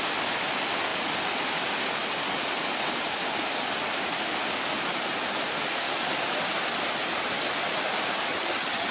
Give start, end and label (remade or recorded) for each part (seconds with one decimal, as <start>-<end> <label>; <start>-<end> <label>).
0.0-8.3 recorded; 8.3-8.9 remade